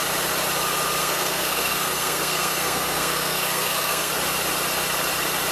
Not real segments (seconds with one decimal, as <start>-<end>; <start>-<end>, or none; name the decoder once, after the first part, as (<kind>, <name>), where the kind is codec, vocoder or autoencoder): 1.0-4.1 (codec, SNAC)